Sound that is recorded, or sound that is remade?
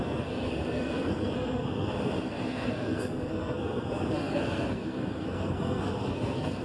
remade